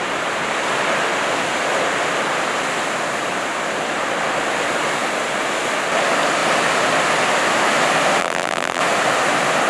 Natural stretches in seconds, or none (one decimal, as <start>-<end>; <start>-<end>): 0.0-8.2; 8.8-9.7